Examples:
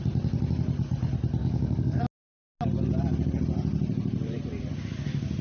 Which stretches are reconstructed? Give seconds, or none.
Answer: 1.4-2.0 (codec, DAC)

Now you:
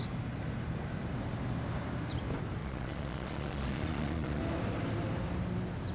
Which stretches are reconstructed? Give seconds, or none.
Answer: 2.6-4.4 (vocoder, Vocos)